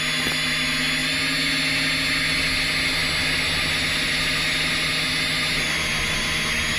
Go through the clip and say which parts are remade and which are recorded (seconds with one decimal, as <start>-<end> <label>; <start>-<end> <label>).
0.0-6.8 recorded